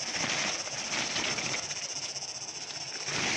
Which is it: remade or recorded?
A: recorded